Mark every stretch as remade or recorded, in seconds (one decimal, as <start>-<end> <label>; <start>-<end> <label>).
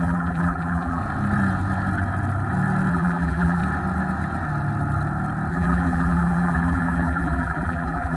0.0-1.0 remade; 1.0-2.9 recorded; 2.9-3.6 remade; 3.6-5.5 recorded; 5.5-8.2 remade